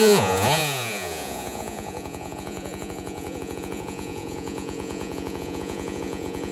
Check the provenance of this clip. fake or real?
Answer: fake